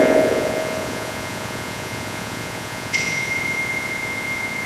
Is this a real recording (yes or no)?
no